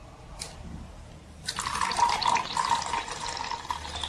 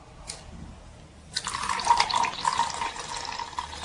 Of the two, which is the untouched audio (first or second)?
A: second